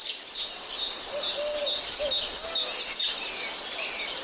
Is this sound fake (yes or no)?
no